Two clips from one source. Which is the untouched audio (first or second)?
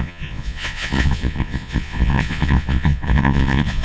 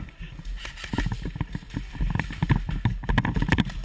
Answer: second